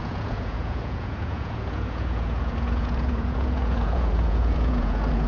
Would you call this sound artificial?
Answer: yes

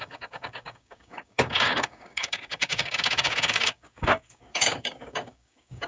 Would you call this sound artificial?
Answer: yes